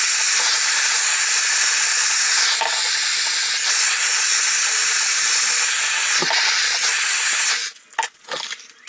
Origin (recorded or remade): recorded